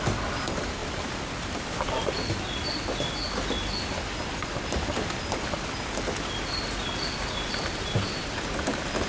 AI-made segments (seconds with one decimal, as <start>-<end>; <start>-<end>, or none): none